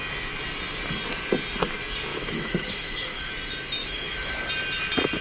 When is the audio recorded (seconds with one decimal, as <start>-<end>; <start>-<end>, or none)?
0.0-2.1; 3.3-3.8; 4.5-5.2